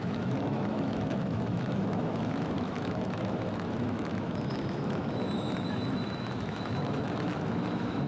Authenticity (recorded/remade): remade